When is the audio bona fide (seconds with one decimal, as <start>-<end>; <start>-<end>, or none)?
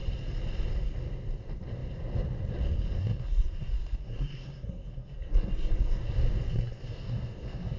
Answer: 0.0-3.0; 6.1-6.5